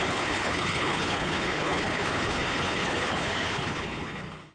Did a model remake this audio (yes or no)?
yes